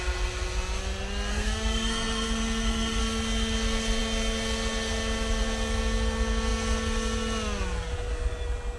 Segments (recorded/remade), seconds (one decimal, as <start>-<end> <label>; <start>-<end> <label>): 0.0-1.3 recorded; 1.3-3.0 remade; 3.0-8.8 recorded